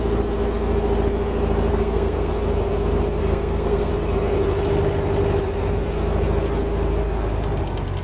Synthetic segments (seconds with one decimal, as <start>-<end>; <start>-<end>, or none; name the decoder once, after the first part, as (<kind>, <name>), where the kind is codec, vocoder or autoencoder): 1.7-2.3 (codec, SNAC); 3.2-3.9